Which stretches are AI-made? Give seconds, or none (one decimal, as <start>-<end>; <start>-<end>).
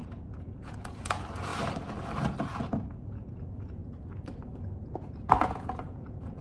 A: 0.0-1.5; 2.7-3.8; 5.4-6.4